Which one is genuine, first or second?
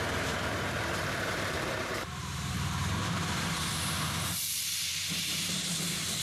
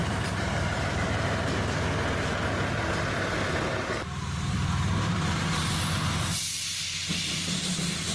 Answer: second